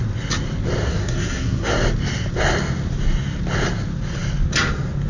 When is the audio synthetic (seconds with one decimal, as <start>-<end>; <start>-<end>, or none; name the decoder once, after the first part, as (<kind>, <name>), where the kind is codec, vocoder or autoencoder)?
0.9-1.7 (codec, SNAC)